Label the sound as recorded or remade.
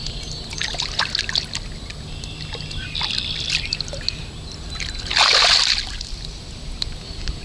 recorded